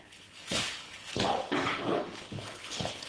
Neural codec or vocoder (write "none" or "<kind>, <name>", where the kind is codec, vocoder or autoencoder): codec, HILCodec